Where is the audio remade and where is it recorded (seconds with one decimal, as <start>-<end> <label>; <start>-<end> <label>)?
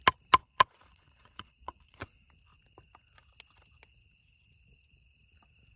0.0-0.4 recorded; 0.4-2.3 remade; 2.3-5.8 recorded